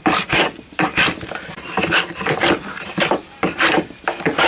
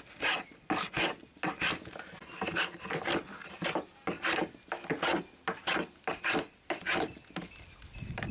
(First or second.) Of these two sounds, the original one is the second